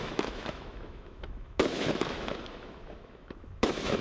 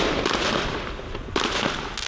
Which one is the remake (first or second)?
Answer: first